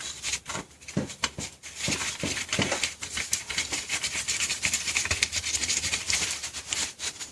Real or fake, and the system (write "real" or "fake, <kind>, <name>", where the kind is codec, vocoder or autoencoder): fake, vocoder, BigVGAN v2